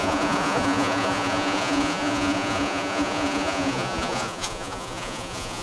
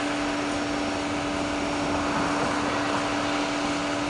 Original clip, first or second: second